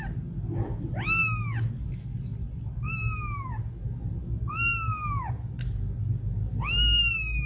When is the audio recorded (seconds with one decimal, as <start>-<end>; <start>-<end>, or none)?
0.0-7.5